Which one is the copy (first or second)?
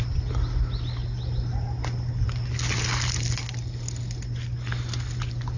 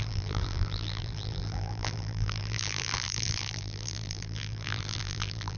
second